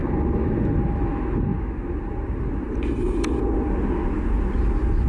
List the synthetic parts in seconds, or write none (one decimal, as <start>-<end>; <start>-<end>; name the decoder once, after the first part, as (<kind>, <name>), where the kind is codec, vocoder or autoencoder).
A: none